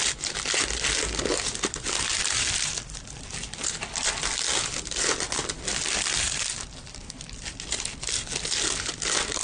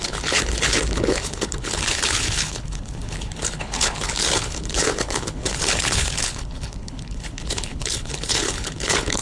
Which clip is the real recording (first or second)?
first